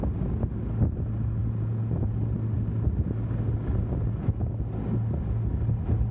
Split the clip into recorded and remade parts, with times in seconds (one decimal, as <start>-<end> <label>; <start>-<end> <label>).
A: 0.0-1.4 recorded; 1.4-2.1 remade; 2.1-6.1 recorded